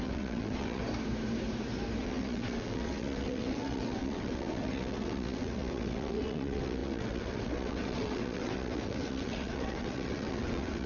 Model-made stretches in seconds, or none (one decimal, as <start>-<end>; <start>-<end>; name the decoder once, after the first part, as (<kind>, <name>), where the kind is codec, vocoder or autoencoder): 0.0-0.8 (vocoder, WaveNeXt); 2.0-10.9